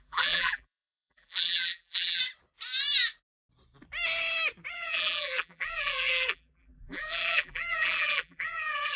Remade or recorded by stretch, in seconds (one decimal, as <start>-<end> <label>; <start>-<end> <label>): 0.0-2.2 remade; 2.2-4.7 recorded; 4.7-9.0 remade

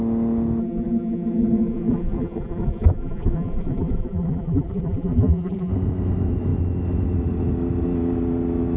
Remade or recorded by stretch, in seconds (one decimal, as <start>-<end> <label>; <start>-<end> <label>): 0.0-0.6 recorded; 0.6-5.7 remade; 5.7-8.8 recorded

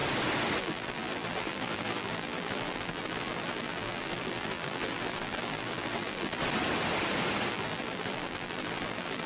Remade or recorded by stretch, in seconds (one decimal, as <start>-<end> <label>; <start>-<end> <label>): 0.0-0.6 recorded; 0.6-6.4 remade; 6.4-7.5 recorded; 7.5-9.3 remade

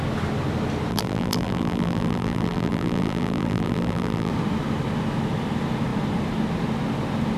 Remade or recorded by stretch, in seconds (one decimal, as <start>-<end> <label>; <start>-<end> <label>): 0.0-0.9 recorded; 0.9-4.3 remade; 4.3-7.4 recorded

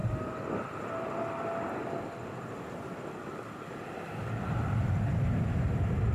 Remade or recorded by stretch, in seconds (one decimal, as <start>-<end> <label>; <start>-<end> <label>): 0.0-6.1 recorded